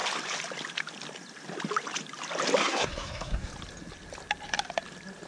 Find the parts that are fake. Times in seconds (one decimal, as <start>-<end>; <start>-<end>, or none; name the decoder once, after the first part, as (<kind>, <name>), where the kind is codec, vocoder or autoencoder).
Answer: 2.6-3.5 (codec, SNAC)